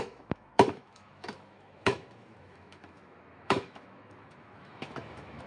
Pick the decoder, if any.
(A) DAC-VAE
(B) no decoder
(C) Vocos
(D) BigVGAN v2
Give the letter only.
A